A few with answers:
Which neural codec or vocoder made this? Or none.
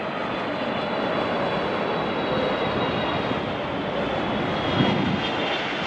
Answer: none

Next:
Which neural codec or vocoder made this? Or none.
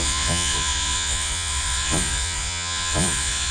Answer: vocoder, Vocos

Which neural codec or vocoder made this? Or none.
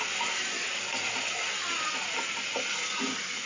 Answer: none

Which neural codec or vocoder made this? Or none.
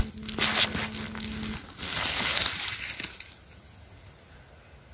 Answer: none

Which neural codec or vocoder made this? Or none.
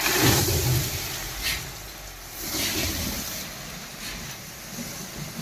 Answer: none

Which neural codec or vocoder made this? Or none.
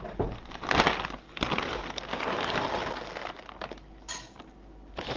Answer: none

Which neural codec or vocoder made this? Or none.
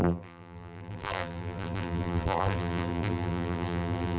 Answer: vocoder, BigVGAN v2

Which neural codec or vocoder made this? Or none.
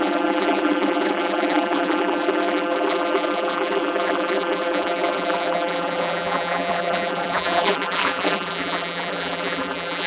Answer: vocoder, BigVGAN v2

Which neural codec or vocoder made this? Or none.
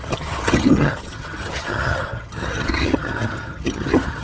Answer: vocoder, HiFi-GAN